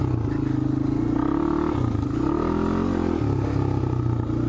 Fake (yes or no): no